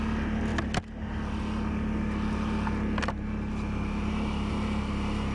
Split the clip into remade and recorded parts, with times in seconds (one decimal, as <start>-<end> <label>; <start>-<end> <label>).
0.0-5.3 recorded